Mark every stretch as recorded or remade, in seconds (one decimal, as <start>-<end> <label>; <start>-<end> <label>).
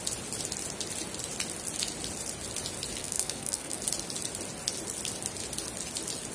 0.0-3.0 recorded; 3.0-3.8 remade; 3.8-6.3 recorded